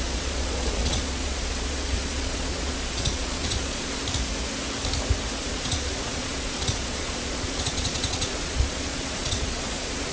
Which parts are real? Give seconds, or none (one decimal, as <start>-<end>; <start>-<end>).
4.0-5.4